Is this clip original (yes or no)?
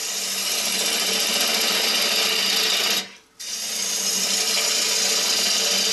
yes